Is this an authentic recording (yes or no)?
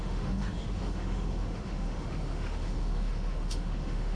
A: no